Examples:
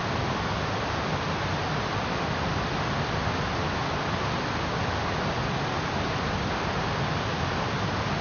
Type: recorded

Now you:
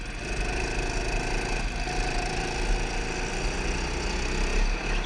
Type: recorded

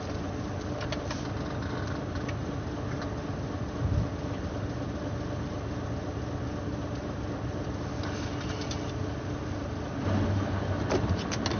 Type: recorded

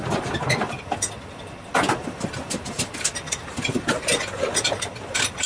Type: recorded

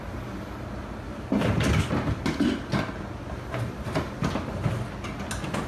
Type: recorded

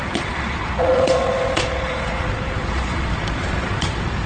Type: remade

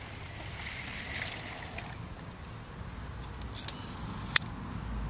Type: recorded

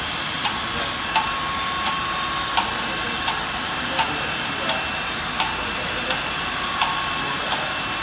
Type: recorded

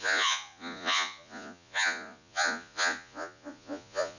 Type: remade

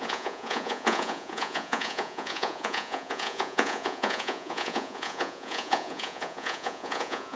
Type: remade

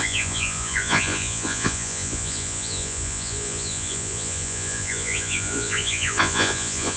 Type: remade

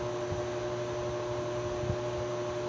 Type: recorded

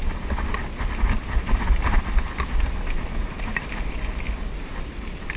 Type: recorded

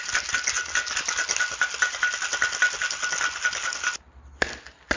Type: recorded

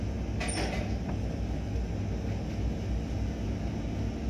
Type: recorded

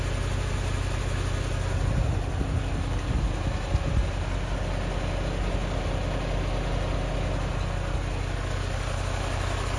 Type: recorded